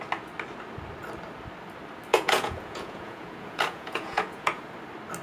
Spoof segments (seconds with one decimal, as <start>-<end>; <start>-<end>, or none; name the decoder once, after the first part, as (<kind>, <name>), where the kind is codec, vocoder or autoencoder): 2.1-4.6 (vocoder, Vocos)